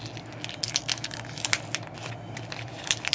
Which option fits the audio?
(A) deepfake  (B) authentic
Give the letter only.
B